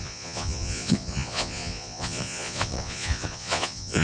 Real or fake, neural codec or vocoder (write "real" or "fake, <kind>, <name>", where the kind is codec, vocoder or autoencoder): fake, vocoder, Vocos